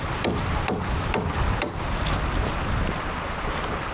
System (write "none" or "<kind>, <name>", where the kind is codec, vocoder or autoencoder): none